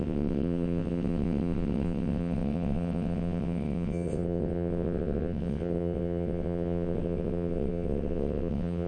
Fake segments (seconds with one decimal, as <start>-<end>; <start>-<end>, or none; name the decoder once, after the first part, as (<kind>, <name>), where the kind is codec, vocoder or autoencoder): 0.0-8.9 (vocoder, WaveNeXt)